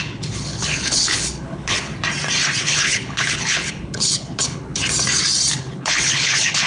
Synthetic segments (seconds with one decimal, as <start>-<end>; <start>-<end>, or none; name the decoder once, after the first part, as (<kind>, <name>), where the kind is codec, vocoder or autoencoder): 0.0-1.9 (codec, HILCodec); 2.6-4.8; 5.5-6.7